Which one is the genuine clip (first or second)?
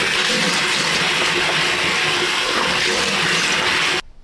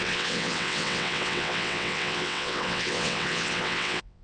first